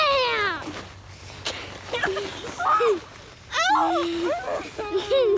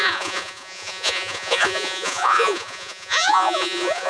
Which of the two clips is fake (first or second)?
second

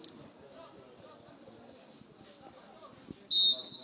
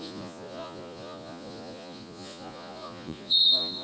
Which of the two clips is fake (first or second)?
second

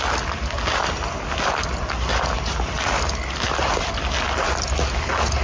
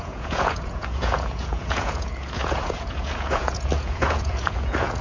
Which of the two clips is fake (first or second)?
second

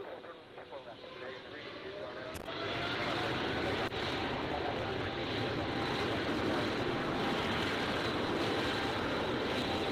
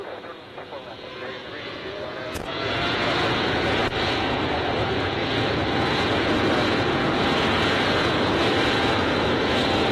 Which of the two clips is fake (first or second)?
second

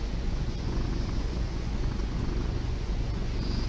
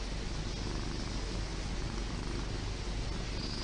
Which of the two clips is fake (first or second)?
first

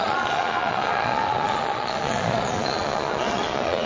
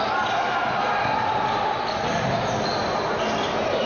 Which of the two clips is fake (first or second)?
first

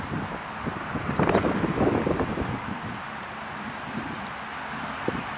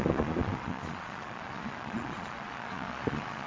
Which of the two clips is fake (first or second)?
second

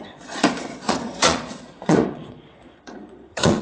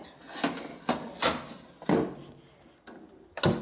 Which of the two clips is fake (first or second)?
first